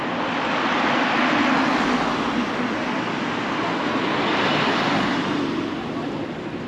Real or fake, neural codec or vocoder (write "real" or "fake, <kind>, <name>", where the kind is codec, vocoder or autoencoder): real